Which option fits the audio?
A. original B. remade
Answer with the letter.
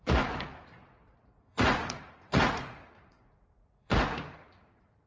B